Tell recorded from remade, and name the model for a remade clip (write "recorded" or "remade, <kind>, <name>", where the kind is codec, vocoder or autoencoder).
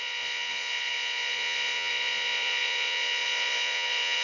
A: remade, vocoder, Vocos